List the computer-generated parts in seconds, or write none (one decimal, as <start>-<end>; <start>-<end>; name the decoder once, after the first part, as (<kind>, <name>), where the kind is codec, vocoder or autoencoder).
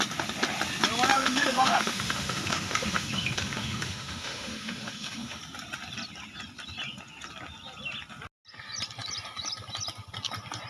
1.1-5.4 (autoencoder, DAC-VAE)